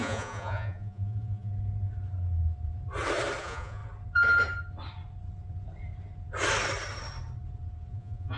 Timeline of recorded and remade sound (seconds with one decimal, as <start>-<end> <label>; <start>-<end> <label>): 0.0-1.5 remade; 1.5-3.4 recorded; 3.4-3.8 remade; 3.8-7.9 recorded; 7.9-8.4 remade